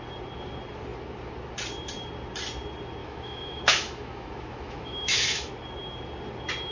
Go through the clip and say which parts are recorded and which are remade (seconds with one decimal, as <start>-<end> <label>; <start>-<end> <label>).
0.0-3.0 recorded; 3.0-5.5 remade; 5.5-6.7 recorded